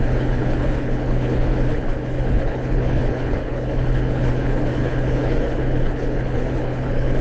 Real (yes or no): no